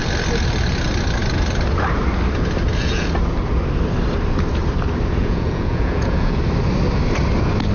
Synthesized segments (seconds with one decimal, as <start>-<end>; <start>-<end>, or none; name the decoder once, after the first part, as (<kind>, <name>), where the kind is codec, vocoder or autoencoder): 5.2-6.4 (vocoder, Vocos)